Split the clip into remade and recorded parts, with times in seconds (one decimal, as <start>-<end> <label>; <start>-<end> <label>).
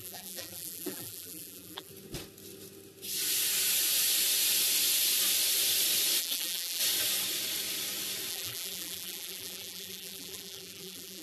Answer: 0.0-1.9 remade; 1.9-6.2 recorded; 6.2-6.8 remade; 6.8-8.3 recorded; 8.3-11.2 remade